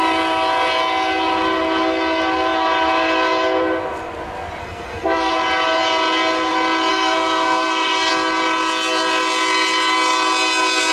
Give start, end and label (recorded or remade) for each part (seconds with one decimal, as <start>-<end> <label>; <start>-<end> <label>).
0.0-4.6 recorded; 4.6-5.3 remade; 5.3-6.9 recorded; 6.9-8.1 remade; 8.1-10.9 recorded